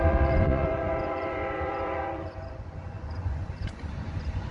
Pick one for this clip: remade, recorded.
remade